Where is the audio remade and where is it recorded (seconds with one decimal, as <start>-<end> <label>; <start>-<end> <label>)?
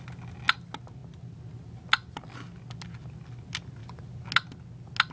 0.0-5.1 recorded